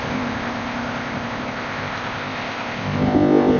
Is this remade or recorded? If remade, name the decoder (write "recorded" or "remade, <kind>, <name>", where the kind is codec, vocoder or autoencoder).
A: remade, codec, ZipCodec